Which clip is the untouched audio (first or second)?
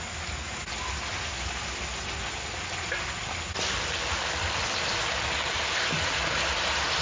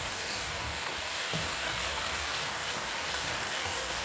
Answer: first